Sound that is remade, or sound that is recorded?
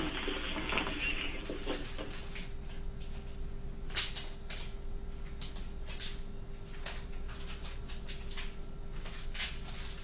recorded